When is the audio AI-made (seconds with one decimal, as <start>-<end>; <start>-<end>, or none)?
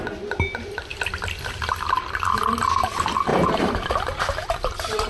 3.3-5.1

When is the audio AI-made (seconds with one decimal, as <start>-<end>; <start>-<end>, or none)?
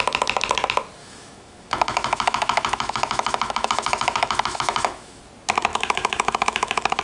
1.0-5.2; 5.7-7.0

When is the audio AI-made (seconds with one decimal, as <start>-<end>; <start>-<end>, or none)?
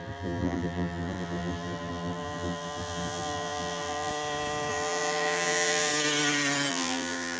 0.0-4.1; 4.7-5.9; 6.7-7.4